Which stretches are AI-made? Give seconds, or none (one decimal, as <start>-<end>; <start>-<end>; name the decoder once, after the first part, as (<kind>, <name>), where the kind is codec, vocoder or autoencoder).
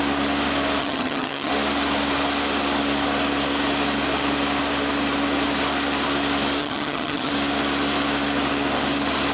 0.8-1.5 (vocoder, HiFi-GAN); 6.6-7.3